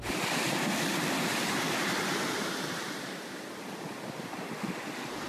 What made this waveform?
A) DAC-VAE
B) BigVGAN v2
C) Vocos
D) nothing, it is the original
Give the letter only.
B